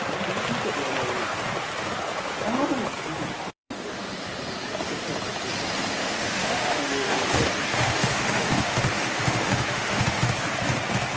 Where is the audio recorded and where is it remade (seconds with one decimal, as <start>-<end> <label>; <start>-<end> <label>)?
0.0-3.4 recorded; 3.4-4.1 remade; 4.1-6.0 recorded; 6.0-7.2 remade; 7.2-7.7 recorded; 7.7-10.3 remade; 10.3-11.2 recorded